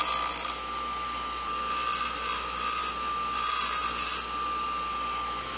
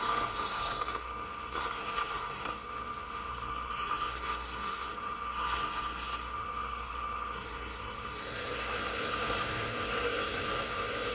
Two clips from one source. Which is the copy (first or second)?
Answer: second